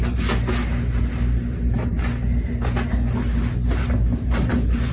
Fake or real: real